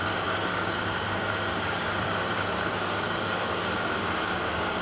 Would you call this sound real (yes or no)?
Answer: no